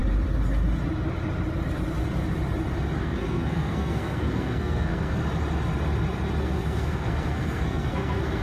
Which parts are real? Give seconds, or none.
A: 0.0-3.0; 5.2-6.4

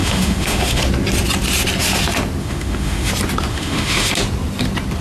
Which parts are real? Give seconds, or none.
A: 0.8-2.4; 3.1-3.5; 4.1-5.0

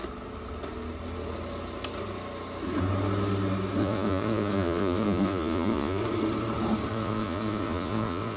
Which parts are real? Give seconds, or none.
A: 0.0-3.8; 6.0-6.9